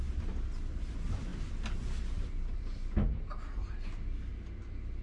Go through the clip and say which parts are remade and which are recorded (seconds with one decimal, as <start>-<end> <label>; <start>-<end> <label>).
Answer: 0.0-5.0 recorded